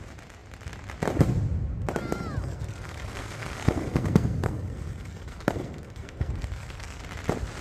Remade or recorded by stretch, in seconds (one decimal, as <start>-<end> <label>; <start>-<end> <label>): 0.0-2.4 recorded; 2.4-7.0 remade; 7.0-7.6 recorded